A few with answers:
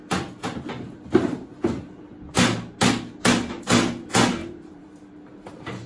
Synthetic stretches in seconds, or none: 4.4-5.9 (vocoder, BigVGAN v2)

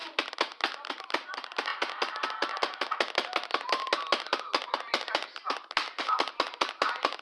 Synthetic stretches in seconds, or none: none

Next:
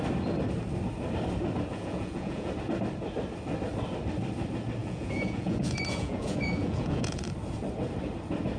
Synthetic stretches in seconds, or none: 1.7-2.5 (vocoder, Vocos); 4.8-7.2

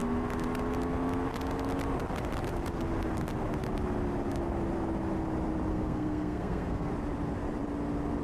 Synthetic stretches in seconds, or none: 5.7-6.9 (codec, SNAC)

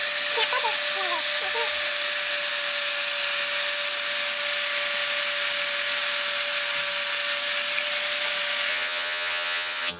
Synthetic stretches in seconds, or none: 8.7-10.0 (vocoder, HiFi-GAN)